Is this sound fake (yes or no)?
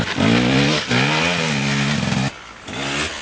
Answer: no